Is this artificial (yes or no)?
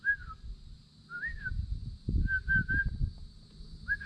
yes